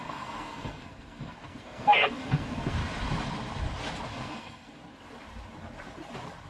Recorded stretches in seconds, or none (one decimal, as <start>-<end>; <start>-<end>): 2.8-4.1; 4.8-6.5